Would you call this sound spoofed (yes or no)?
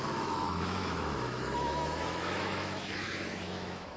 yes